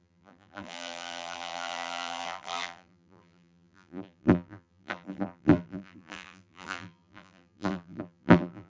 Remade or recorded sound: remade